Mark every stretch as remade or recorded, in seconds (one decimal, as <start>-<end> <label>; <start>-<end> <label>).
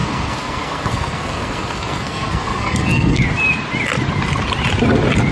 0.0-3.2 remade; 3.2-5.3 recorded